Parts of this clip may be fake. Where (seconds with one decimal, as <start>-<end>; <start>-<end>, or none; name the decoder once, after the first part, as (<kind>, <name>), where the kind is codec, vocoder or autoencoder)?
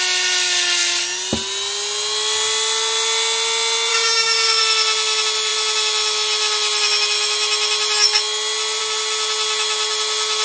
3.9-4.6 (codec, DAC)